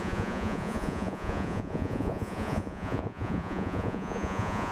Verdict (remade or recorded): remade